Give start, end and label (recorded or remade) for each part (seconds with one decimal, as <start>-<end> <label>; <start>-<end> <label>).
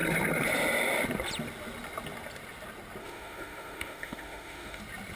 0.0-3.0 recorded; 3.0-4.8 remade; 4.8-5.2 recorded